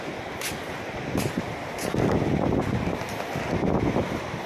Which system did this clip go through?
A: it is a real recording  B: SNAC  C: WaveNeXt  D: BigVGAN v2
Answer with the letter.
A